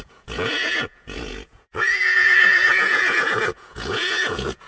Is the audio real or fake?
fake